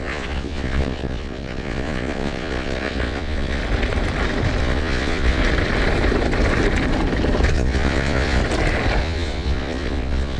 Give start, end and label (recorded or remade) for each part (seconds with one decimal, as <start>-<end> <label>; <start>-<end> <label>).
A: 0.0-3.6 remade; 3.6-4.6 recorded; 4.6-5.4 remade; 5.4-7.5 recorded; 7.5-8.4 remade; 8.4-9.0 recorded; 9.0-10.4 remade